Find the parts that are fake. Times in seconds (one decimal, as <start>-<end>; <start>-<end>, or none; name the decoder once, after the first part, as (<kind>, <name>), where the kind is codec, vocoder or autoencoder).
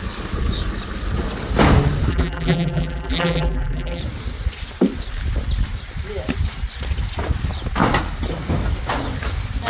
2.1-4.0 (vocoder, BigVGAN v2)